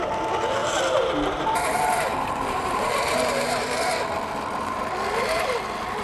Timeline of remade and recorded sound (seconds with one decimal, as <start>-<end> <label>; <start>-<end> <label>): 0.0-0.6 recorded; 0.6-4.0 remade; 4.0-6.0 recorded